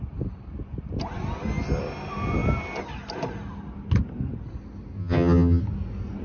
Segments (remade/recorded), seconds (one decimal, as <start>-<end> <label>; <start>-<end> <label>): 0.0-5.0 recorded; 5.0-5.6 remade; 5.6-6.2 recorded